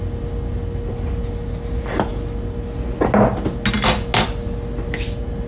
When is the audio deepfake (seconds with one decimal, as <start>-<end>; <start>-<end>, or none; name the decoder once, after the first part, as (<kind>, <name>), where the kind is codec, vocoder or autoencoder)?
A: none